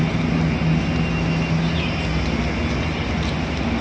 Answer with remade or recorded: recorded